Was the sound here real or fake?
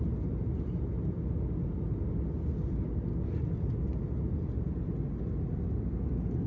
real